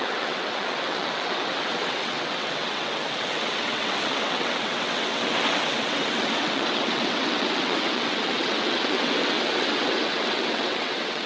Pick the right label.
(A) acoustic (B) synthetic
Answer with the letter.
B